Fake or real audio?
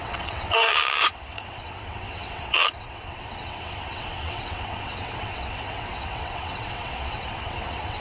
fake